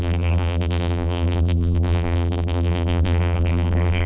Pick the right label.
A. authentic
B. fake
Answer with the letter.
B